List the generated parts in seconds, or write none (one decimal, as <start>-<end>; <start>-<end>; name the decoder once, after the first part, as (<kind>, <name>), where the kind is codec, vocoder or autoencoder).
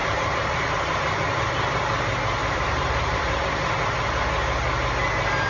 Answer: 0.0-0.9 (vocoder, BigVGAN v2); 2.4-3.4